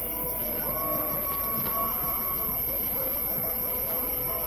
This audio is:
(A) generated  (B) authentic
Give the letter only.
B